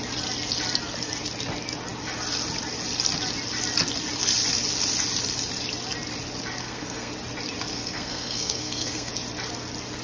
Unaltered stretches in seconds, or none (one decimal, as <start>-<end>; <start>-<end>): 0.0-6.6; 7.1-7.7; 9.1-10.0